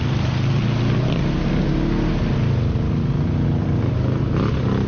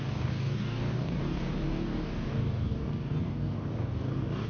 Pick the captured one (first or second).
first